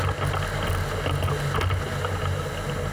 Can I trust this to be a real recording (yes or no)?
yes